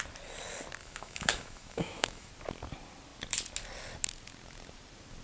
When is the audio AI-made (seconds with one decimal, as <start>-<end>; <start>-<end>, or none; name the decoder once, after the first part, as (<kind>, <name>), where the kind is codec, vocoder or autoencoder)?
0.8-2.3 (autoencoder, DAC-VAE)